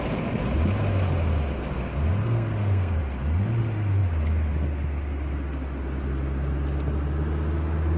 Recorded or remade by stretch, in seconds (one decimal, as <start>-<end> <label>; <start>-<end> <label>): 0.0-2.2 recorded; 2.2-3.0 remade; 3.0-8.0 recorded